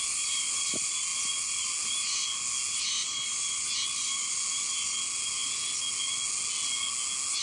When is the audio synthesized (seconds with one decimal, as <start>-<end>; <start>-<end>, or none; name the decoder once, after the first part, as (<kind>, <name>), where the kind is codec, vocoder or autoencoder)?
none